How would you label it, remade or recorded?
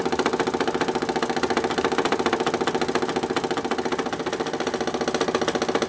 recorded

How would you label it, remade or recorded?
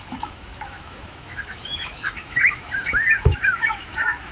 remade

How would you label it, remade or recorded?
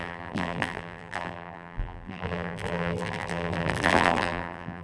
remade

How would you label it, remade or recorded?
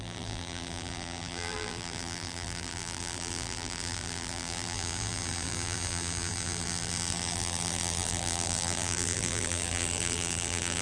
remade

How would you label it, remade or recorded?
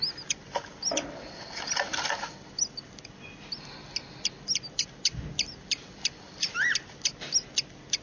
recorded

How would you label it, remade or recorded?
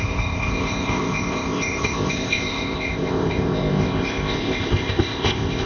remade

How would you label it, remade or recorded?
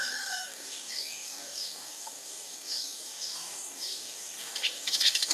remade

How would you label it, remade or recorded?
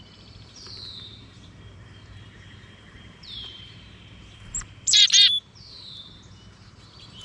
remade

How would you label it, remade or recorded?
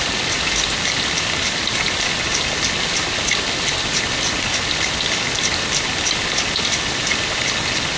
recorded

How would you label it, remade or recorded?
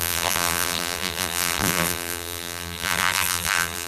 remade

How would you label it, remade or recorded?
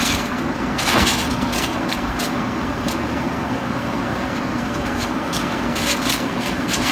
remade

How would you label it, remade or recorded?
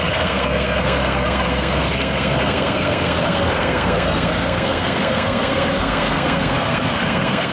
remade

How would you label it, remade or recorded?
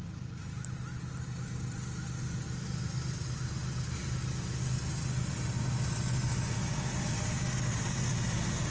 recorded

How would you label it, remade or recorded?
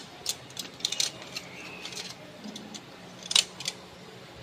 remade